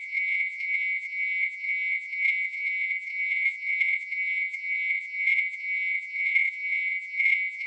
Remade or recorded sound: remade